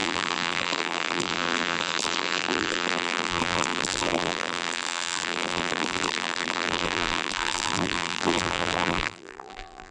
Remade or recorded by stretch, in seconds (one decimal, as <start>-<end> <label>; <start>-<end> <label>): 0.0-9.9 remade